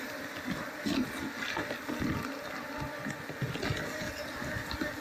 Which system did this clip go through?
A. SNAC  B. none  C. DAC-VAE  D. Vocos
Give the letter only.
B